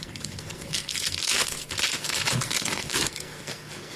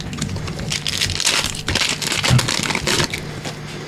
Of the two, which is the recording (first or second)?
second